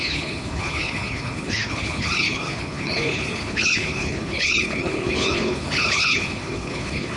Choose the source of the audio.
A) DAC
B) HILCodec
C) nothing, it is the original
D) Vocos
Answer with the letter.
B